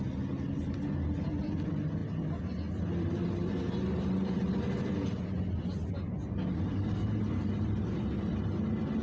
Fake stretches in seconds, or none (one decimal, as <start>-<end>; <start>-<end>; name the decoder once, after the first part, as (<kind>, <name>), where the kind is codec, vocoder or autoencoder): none